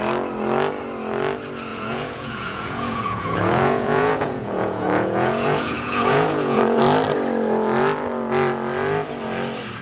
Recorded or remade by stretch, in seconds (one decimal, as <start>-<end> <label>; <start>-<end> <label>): 0.0-1.7 recorded; 1.7-6.8 remade; 6.8-9.8 recorded